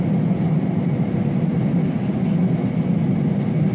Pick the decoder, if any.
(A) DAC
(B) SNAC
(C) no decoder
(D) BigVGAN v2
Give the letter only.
C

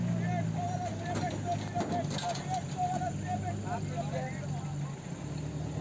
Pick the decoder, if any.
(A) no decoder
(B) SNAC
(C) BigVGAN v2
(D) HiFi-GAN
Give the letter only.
A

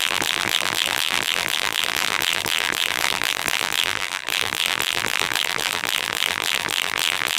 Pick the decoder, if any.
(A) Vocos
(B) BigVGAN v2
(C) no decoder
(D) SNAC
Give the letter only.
B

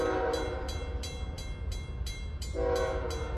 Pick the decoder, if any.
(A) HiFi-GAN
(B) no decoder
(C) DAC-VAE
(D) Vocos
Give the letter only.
B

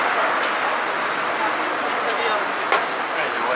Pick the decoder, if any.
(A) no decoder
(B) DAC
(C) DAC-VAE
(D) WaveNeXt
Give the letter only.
A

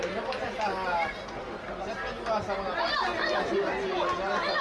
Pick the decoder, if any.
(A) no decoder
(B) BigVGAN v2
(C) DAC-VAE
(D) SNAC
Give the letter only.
A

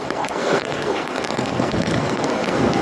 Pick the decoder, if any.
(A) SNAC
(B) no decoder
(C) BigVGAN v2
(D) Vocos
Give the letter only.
A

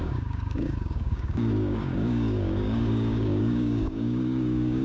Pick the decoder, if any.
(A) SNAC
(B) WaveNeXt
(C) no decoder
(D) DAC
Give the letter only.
D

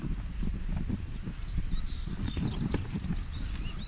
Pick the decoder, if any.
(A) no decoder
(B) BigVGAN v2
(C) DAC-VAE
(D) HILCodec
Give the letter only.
A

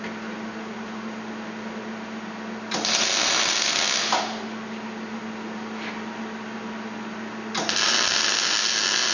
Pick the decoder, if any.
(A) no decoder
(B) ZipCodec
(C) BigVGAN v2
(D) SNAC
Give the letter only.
A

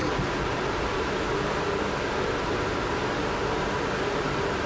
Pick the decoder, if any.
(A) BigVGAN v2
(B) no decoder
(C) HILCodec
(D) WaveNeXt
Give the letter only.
A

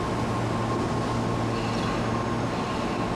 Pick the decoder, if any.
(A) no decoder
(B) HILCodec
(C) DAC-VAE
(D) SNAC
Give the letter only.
A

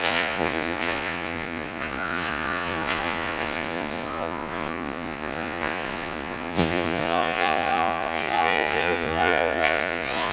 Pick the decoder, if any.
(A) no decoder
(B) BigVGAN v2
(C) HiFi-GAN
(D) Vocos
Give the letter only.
D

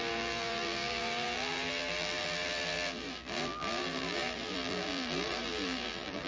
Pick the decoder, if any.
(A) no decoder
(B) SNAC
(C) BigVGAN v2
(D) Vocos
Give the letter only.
C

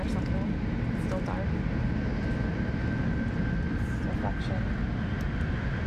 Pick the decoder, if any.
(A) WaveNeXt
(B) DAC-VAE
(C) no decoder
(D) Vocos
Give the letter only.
C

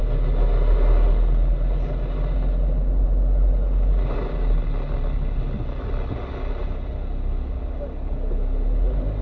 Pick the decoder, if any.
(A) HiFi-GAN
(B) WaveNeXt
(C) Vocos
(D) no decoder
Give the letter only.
D